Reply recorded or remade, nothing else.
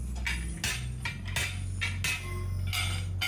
recorded